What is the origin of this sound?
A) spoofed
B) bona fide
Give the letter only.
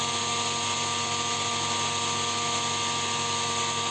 B